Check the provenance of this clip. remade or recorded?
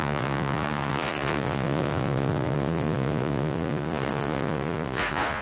remade